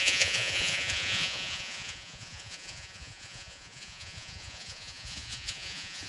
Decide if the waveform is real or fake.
fake